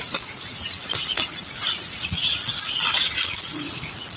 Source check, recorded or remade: remade